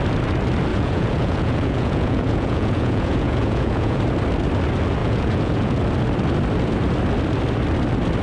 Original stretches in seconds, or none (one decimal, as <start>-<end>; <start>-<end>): 0.0-0.7; 4.0-5.0; 5.7-8.2